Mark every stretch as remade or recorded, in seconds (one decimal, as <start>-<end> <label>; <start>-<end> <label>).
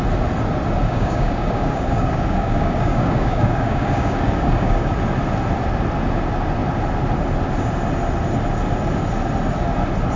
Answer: 0.0-0.8 recorded; 0.8-4.9 remade; 4.9-10.2 recorded